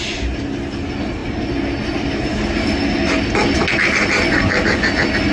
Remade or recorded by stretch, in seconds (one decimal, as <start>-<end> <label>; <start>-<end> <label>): 0.0-5.3 recorded